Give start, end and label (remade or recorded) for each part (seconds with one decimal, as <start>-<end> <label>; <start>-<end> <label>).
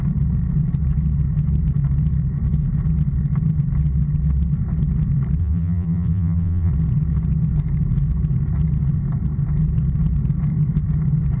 0.0-5.4 recorded; 5.4-6.7 remade; 6.7-11.4 recorded